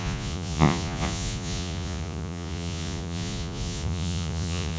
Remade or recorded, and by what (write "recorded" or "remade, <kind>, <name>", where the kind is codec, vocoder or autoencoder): remade, vocoder, Vocos